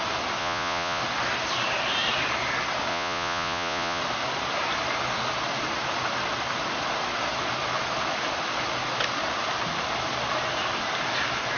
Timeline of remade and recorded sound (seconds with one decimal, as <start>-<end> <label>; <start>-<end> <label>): 0.0-0.4 recorded; 0.4-1.0 remade; 1.0-2.9 recorded; 2.9-4.0 remade; 4.0-11.6 recorded